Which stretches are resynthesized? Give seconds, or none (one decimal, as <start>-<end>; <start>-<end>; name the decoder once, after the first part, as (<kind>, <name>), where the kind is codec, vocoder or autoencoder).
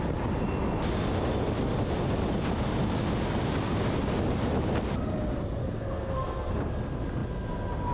5.6-6.5 (codec, SNAC)